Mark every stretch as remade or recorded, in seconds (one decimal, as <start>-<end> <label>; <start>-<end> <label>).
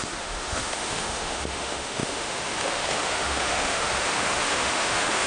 0.0-5.3 remade